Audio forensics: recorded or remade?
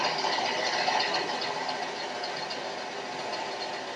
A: recorded